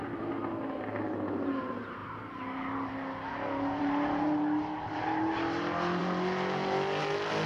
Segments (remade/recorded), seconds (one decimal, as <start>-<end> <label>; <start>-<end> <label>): 0.0-7.5 recorded